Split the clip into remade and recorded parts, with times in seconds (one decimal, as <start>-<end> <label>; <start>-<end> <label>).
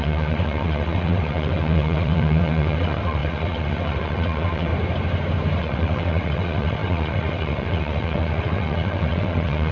0.0-4.7 remade; 4.7-5.6 recorded; 5.6-9.7 remade